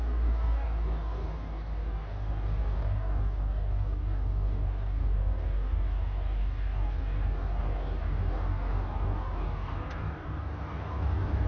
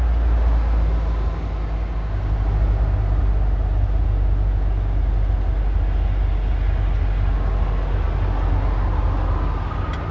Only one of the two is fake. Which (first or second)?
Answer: first